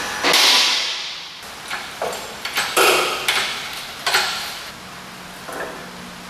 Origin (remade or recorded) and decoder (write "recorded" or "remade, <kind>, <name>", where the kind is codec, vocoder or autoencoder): recorded